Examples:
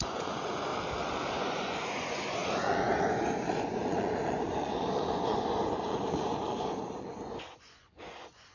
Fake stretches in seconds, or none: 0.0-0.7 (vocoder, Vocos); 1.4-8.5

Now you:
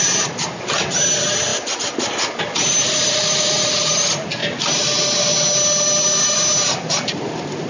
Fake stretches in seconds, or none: none